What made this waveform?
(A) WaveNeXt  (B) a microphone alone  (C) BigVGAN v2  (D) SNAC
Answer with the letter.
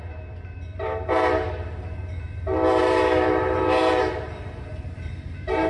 C